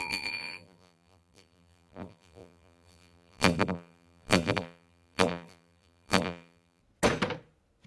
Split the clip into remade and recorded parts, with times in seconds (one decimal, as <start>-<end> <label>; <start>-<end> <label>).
0.0-6.8 remade; 6.8-7.9 recorded